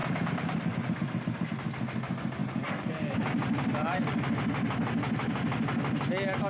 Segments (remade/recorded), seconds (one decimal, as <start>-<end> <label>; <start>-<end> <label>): 0.0-1.5 remade; 1.5-2.4 recorded; 2.4-4.3 remade; 4.3-6.5 recorded